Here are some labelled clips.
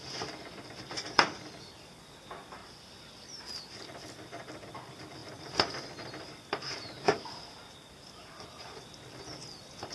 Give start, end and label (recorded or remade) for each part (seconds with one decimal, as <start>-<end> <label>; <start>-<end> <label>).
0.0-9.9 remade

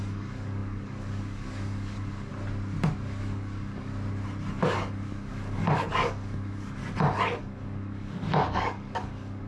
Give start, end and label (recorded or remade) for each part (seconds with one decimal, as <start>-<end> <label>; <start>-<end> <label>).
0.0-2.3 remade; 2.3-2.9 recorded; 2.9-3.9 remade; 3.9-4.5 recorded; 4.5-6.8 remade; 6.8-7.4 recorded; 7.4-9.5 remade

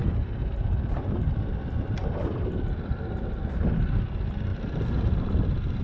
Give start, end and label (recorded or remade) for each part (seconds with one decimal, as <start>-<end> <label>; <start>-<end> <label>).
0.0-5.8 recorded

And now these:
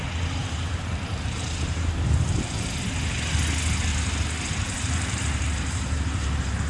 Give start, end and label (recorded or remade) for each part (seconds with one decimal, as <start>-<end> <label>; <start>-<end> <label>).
0.0-0.4 recorded; 0.4-2.5 remade; 2.5-3.9 recorded; 3.9-6.7 remade

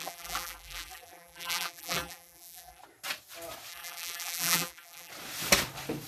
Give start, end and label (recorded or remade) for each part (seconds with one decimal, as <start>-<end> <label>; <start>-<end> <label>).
0.0-2.8 remade; 2.8-3.7 recorded; 3.7-5.1 remade; 5.1-6.1 recorded